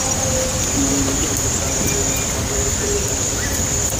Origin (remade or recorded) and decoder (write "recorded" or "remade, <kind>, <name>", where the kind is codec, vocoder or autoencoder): recorded